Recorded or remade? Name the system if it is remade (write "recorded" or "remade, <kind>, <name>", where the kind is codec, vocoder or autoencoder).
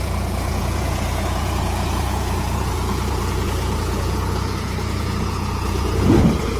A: remade, vocoder, Vocos